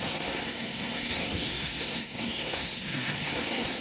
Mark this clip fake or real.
fake